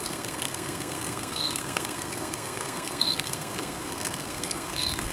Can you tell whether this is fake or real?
fake